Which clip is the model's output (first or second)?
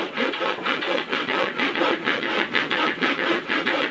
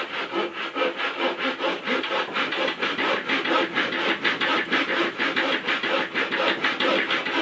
first